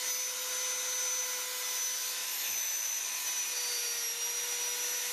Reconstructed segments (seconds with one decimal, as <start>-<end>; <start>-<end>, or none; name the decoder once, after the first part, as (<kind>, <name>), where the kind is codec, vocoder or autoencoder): 2.2-3.2 (autoencoder, DAC-VAE)